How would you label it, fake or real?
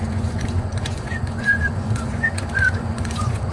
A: fake